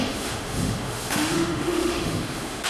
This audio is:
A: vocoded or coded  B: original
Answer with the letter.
A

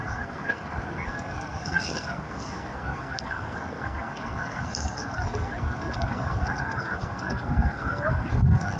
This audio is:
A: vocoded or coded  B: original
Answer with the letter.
A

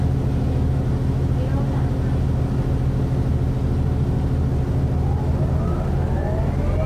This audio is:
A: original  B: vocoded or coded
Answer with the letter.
A